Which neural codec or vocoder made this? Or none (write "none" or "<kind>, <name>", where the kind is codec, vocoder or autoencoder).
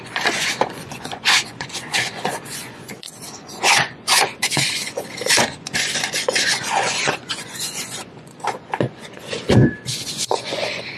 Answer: vocoder, Vocos